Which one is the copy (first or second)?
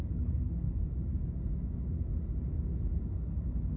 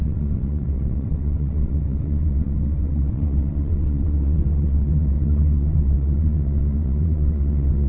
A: second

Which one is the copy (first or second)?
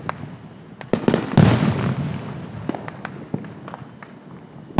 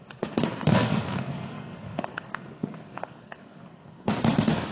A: second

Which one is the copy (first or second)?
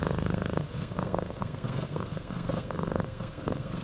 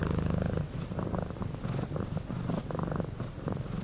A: first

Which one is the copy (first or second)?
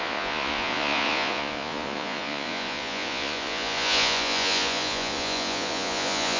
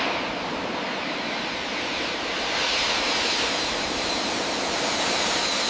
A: first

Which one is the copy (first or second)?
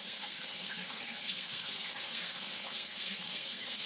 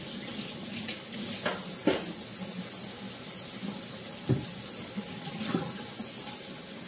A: first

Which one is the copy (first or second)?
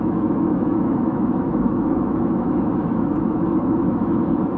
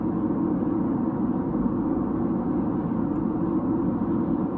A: first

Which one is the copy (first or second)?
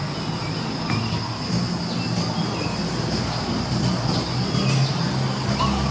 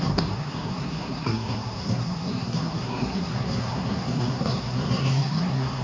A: second